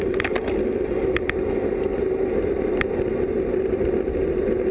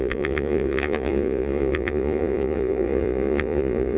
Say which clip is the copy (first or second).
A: second